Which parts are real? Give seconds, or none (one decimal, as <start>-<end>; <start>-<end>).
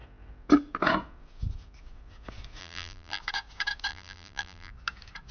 0.0-2.6; 3.2-3.9; 4.7-5.3